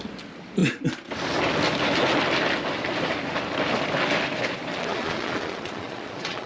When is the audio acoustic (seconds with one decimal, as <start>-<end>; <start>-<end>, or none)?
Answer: 0.0-4.7